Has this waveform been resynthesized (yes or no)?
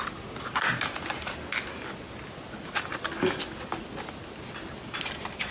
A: no